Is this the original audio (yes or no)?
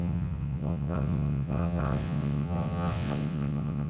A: no